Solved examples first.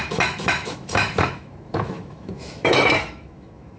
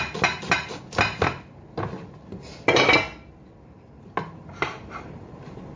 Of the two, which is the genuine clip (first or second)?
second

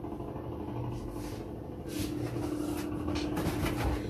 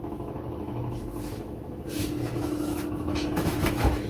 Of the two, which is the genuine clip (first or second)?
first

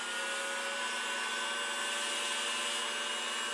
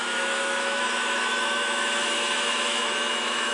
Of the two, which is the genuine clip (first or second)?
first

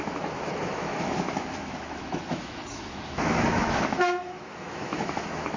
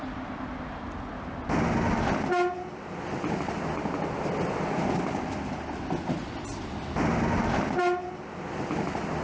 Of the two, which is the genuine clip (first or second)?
second